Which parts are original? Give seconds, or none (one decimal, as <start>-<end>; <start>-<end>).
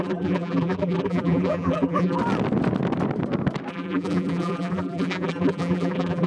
2.2-3.7